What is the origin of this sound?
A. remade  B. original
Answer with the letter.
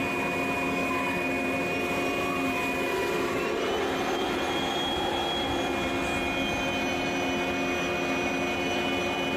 B